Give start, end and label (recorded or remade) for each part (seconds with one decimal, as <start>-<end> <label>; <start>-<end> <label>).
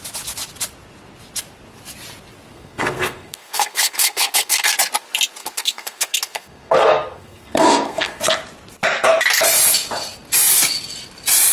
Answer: 0.0-2.5 recorded; 2.5-4.7 remade; 4.7-5.4 recorded; 5.4-8.2 remade; 8.2-11.5 recorded